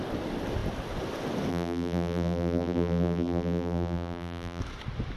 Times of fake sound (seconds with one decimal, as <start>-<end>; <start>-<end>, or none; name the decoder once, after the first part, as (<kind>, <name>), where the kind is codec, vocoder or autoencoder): 1.5-4.6 (vocoder, BigVGAN v2)